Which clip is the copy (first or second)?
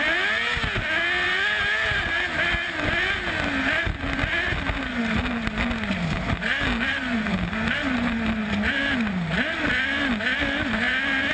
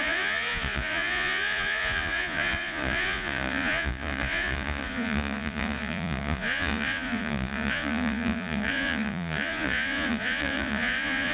second